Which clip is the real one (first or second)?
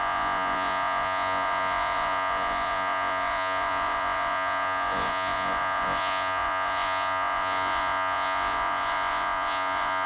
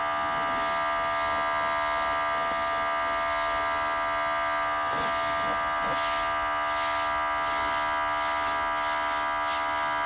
second